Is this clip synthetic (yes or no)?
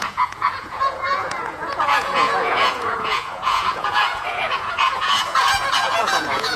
yes